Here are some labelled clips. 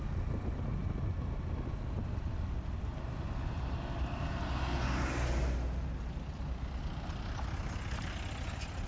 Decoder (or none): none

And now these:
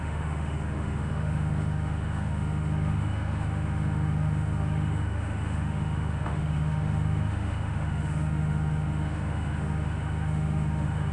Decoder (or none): autoencoder, DAC-VAE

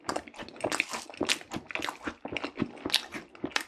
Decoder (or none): none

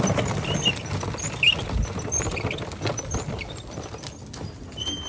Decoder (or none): none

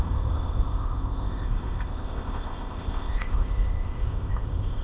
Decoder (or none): codec, ZipCodec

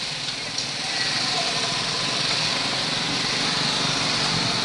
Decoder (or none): none